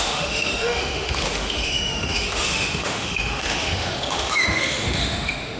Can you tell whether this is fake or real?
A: fake